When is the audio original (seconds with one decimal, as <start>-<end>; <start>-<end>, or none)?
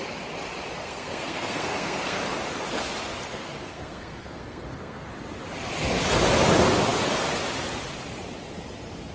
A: 0.0-0.8; 2.2-3.3; 5.1-9.1